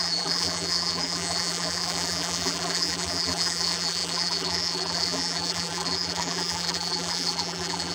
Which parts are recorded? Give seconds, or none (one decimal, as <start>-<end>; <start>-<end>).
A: none